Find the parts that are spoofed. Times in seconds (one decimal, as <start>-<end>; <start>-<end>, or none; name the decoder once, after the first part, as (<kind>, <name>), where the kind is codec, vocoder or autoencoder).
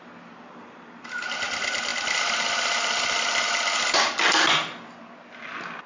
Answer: none